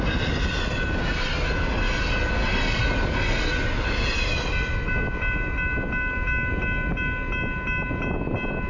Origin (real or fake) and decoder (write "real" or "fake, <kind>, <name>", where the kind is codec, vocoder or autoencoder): real